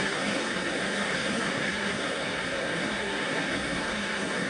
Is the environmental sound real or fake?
fake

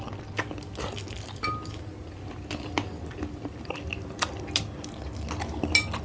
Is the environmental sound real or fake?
real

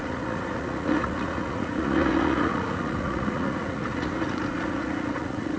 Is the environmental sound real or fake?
fake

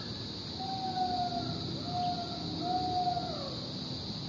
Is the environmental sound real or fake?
real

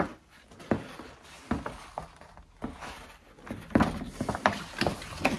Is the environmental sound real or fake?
real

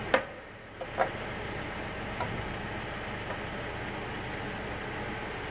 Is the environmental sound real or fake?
real